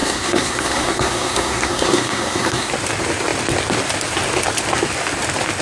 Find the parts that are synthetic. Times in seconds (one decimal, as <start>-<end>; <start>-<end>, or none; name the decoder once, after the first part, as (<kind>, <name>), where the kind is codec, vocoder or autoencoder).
0.0-2.7 (codec, SNAC)